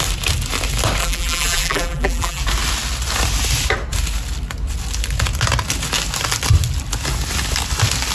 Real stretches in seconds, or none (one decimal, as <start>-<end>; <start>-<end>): 0.0-1.0; 2.4-8.1